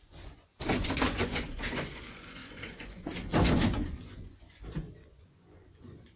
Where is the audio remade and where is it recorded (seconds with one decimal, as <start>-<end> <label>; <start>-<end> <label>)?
0.0-6.2 remade